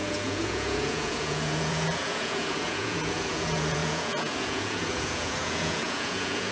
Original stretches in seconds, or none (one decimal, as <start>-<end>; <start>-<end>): none